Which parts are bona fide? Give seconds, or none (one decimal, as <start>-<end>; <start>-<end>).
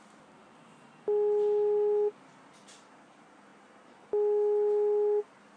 0.0-5.6